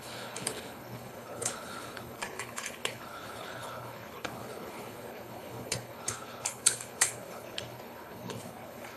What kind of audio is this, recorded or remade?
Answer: remade